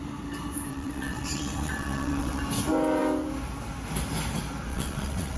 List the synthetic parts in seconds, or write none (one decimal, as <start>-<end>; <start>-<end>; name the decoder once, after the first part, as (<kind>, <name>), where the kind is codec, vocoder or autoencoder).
0.7-2.4 (vocoder, WaveNeXt); 4.7-5.4